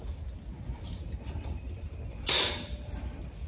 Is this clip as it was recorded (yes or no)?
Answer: yes